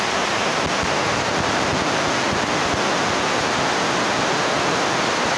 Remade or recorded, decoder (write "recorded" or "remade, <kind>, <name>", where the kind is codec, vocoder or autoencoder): recorded